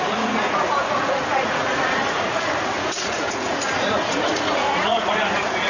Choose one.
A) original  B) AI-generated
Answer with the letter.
B